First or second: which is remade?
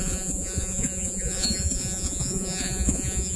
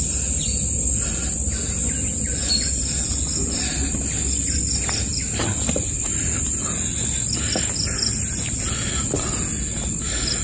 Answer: first